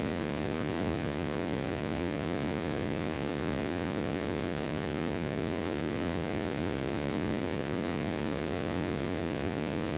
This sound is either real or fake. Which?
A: fake